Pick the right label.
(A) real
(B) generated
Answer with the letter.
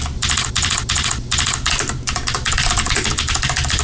B